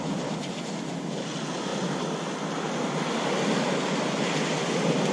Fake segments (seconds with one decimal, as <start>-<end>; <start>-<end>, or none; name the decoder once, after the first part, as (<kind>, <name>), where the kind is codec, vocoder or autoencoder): none

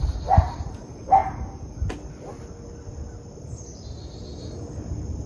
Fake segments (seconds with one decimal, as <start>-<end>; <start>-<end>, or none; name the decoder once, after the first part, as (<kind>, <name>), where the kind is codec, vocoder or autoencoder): 0.0-1.2 (vocoder, BigVGAN v2); 4.4-5.3

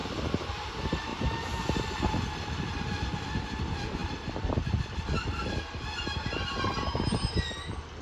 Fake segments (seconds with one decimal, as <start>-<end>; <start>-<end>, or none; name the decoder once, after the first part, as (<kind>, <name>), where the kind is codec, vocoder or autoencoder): 1.1-1.6 (vocoder, BigVGAN v2); 4.0-5.1

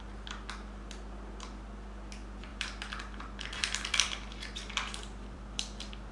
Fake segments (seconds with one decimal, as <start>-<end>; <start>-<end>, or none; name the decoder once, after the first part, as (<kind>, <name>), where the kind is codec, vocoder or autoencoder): 2.5-6.1 (vocoder, BigVGAN v2)

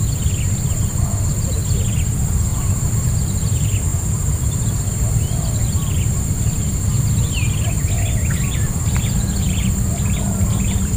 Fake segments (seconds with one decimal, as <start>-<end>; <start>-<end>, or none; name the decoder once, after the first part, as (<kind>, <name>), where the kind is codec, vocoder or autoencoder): 2.5-3.1 (vocoder, BigVGAN v2)

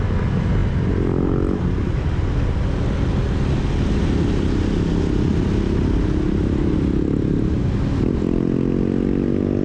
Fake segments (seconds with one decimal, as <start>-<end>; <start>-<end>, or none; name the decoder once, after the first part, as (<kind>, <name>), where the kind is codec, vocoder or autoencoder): none

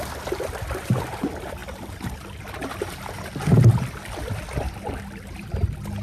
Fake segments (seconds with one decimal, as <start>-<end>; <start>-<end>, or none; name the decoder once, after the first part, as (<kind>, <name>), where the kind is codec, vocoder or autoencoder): none